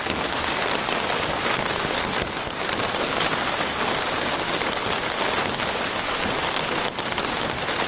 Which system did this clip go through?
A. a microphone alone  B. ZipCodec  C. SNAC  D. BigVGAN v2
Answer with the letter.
A